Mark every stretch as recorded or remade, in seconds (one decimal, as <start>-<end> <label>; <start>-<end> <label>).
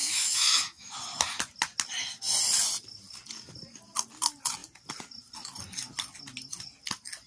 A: 0.0-0.9 remade; 0.9-7.3 recorded